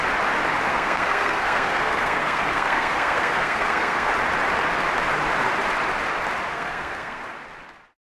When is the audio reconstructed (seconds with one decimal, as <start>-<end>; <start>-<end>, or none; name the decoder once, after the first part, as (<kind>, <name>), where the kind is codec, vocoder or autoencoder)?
0.7-4.1 (codec, SNAC); 6.5-7.2